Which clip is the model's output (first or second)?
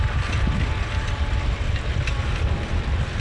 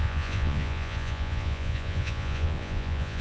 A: second